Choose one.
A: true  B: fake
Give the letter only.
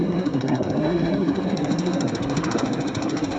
B